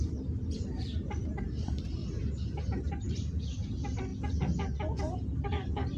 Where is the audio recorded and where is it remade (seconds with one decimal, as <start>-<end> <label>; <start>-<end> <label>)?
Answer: 0.0-2.0 remade; 2.0-2.9 recorded; 2.9-4.1 remade; 4.1-5.0 recorded; 5.0-6.0 remade